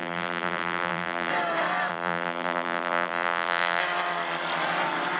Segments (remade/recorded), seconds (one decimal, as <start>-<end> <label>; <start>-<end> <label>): 0.0-1.3 remade; 1.3-1.9 recorded; 1.9-3.8 remade; 3.8-5.2 recorded